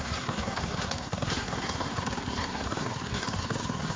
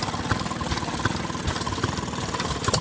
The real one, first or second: second